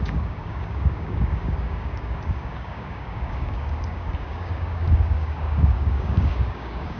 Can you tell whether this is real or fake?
fake